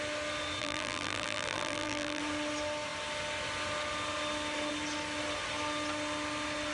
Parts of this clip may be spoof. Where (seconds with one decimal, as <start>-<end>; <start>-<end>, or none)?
0.6-2.2